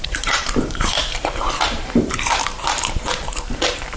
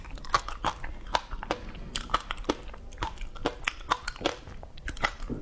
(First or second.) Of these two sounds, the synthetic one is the first